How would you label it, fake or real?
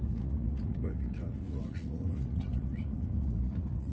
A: fake